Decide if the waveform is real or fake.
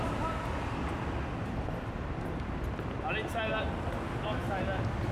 real